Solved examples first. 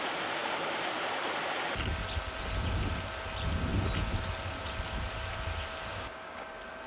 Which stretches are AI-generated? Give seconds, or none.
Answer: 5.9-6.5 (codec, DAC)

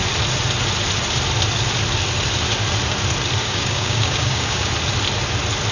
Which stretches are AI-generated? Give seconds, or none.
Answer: 3.4-4.7 (codec, DAC)